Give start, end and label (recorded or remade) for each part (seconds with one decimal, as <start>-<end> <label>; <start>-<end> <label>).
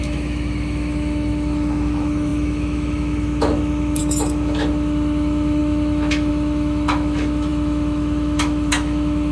0.0-9.3 remade